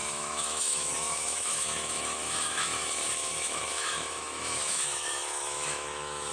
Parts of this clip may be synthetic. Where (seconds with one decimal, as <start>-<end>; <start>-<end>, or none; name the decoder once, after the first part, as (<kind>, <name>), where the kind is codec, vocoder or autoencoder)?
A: 0.0-6.3 (autoencoder, DAC-VAE)